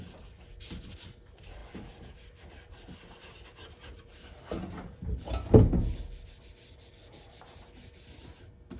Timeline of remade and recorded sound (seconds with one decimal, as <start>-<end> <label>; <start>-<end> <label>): 0.0-8.8 recorded